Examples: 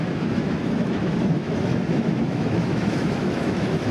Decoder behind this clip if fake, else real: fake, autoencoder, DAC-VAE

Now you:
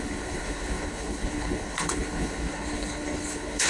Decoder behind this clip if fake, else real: fake, codec, HILCodec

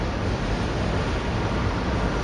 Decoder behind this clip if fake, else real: real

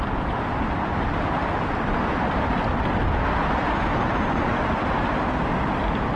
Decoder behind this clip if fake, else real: fake, vocoder, BigVGAN v2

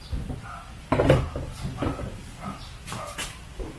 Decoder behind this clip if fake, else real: real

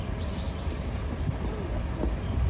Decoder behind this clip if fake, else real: real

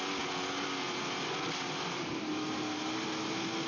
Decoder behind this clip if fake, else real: real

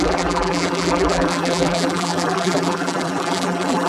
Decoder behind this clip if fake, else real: fake, vocoder, BigVGAN v2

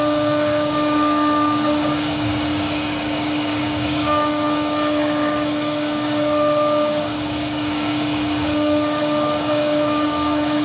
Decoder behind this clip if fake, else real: fake, codec, DAC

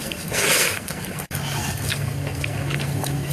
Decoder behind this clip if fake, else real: fake, codec, SNAC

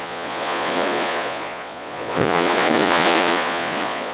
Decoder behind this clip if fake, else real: fake, vocoder, Vocos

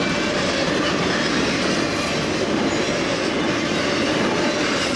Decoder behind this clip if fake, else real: real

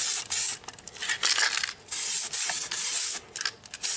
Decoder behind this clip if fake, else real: real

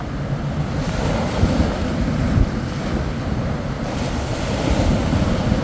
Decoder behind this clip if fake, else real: real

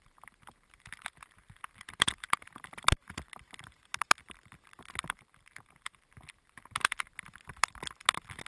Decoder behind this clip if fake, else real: fake, vocoder, BigVGAN v2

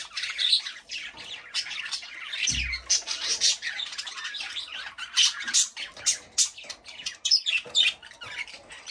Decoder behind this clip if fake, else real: real